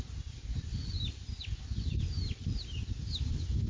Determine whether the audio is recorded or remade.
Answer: recorded